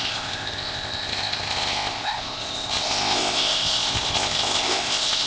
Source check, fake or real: fake